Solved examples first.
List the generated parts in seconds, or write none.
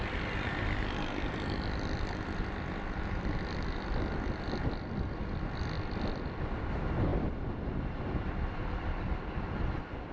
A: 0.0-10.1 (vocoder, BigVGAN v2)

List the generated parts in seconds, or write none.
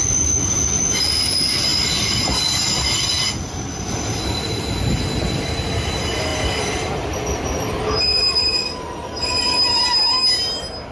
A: none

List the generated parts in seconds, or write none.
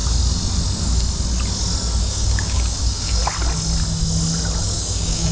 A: 2.0-3.2 (codec, DAC); 4.6-5.3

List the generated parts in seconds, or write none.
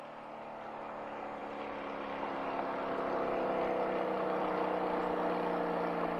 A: none